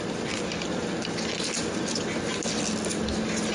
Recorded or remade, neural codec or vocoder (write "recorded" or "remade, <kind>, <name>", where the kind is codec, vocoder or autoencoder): recorded